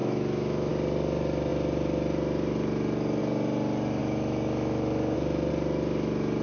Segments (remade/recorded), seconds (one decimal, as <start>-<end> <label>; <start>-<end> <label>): 0.0-0.7 remade; 0.7-4.0 recorded; 4.0-5.5 remade; 5.5-6.4 recorded

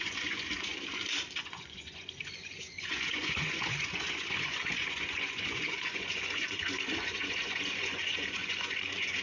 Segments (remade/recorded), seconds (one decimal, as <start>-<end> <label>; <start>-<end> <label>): 0.0-0.7 remade; 0.7-1.4 recorded; 1.4-9.2 remade

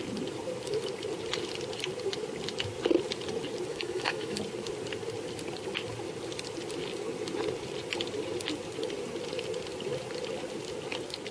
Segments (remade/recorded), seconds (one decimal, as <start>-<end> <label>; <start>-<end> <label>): 0.0-3.7 recorded; 3.7-4.4 remade; 4.4-11.3 recorded

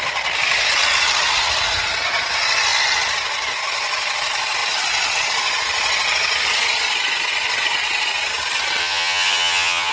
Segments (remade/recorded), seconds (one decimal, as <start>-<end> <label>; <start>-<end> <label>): 0.0-8.8 recorded; 8.8-9.9 remade

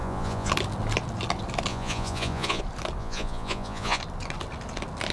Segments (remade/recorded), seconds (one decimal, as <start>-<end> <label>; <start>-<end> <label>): 0.0-0.5 remade; 0.5-1.7 recorded; 1.7-2.6 remade; 2.6-3.0 recorded; 3.0-4.0 remade; 4.0-5.1 recorded

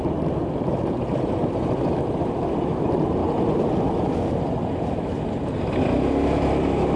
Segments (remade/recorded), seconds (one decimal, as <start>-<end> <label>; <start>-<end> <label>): 0.0-7.0 recorded